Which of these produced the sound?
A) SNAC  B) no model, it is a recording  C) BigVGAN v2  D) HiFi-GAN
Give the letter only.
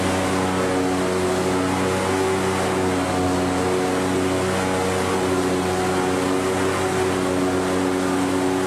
B